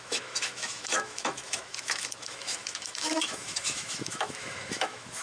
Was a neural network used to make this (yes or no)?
yes